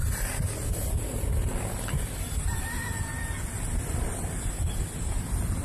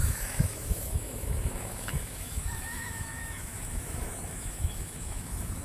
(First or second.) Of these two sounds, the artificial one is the second